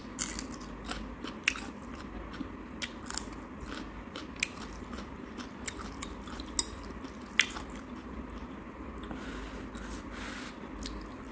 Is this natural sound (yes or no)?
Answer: yes